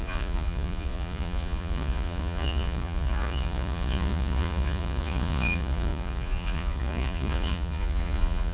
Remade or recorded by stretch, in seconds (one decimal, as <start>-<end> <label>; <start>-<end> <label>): 0.0-8.5 remade